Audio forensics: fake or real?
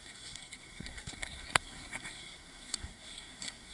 fake